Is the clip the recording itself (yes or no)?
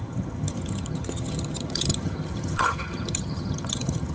no